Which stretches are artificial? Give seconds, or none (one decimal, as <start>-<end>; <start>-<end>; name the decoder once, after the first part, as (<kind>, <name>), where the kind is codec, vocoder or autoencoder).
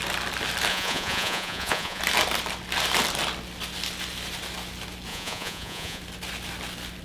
0.7-2.0 (vocoder, Vocos); 5.1-6.0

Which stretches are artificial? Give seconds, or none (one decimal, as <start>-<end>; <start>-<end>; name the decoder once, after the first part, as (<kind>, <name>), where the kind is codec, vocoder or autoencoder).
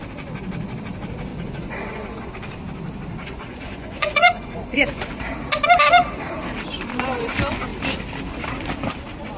1.3-2.3 (vocoder, Vocos); 3.2-5.2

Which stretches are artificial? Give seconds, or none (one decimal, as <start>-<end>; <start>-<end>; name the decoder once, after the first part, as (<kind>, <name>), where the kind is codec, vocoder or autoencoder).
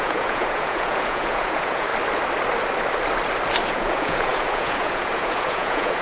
0.0-1.9 (vocoder, Vocos); 3.7-6.0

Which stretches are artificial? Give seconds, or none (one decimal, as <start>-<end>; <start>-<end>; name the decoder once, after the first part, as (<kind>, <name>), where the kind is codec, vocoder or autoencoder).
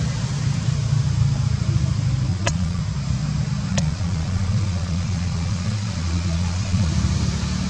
2.3-2.8 (vocoder, Vocos); 3.7-6.9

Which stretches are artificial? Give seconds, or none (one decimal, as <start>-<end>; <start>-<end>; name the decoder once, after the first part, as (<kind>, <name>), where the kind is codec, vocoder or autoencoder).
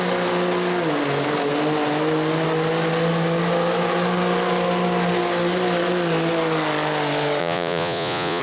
7.4-8.4 (vocoder, Vocos)